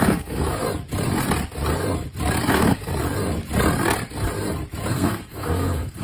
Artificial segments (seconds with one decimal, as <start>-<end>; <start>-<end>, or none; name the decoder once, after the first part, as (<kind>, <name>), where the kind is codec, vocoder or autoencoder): 0.0-0.4 (codec, SNAC); 2.5-2.9; 4.9-6.0